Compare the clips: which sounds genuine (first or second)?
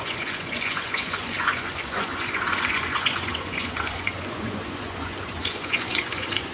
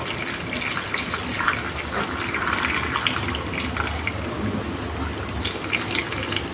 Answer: second